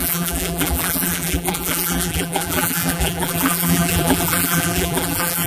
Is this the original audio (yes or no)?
no